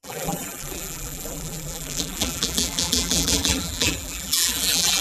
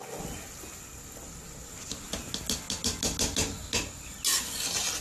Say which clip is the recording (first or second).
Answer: second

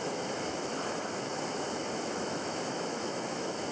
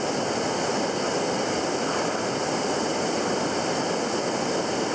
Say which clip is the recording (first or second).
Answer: second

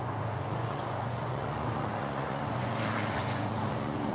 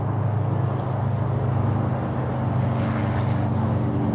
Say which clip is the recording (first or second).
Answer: second